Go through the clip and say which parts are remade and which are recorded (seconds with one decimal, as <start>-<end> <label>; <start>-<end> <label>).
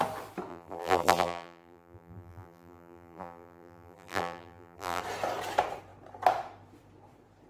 0.0-0.5 recorded; 0.5-5.0 remade; 5.0-7.5 recorded